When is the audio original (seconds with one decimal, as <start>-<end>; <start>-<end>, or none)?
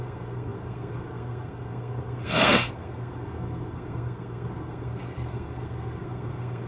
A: none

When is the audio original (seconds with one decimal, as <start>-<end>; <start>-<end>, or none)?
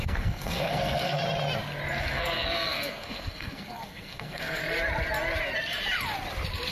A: 1.2-2.0; 4.6-6.7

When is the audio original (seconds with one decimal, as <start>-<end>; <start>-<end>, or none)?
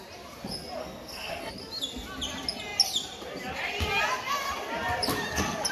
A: 0.0-0.8; 1.5-5.7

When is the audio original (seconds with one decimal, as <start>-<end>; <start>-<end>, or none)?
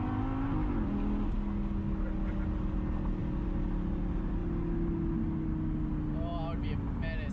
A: 0.0-7.3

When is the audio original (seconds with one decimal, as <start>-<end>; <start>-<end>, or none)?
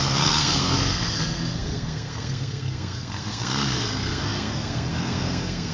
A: none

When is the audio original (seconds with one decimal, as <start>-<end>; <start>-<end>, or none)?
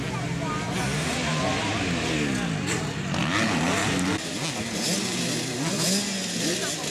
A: 0.0-6.9